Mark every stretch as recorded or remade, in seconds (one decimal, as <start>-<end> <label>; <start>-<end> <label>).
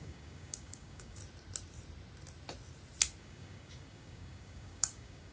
0.0-1.2 remade; 1.2-3.2 recorded; 3.2-5.3 remade